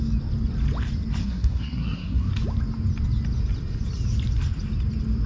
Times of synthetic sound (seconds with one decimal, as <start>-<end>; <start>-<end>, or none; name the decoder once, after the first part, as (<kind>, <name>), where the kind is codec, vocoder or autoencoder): 1.2-2.3 (codec, SNAC)

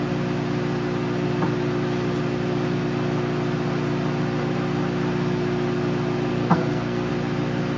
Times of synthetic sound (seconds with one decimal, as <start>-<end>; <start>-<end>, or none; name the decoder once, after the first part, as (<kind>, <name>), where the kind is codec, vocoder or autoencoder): 6.3-7.1 (codec, SNAC)

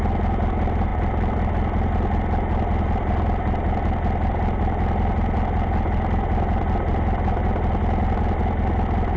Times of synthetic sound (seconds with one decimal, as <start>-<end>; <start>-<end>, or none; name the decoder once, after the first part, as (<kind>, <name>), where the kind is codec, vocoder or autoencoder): none

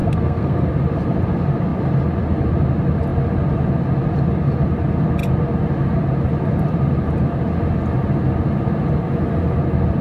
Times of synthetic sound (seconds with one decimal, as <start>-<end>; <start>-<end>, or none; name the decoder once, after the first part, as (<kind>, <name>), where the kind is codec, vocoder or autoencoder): 0.0-0.7 (codec, SNAC)

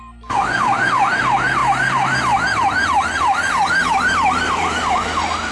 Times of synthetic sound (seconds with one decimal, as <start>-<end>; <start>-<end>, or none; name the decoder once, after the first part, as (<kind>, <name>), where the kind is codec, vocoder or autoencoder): none